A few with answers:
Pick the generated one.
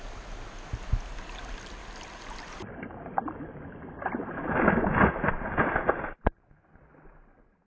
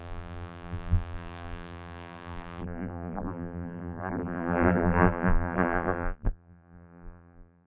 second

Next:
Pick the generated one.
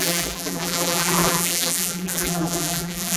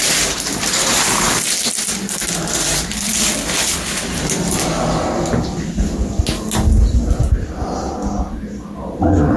first